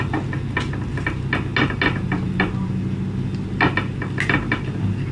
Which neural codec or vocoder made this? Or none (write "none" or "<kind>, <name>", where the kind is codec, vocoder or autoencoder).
none